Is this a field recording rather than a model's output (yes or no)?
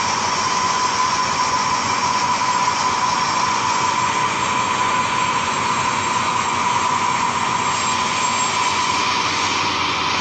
no